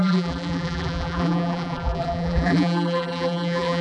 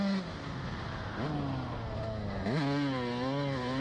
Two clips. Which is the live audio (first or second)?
second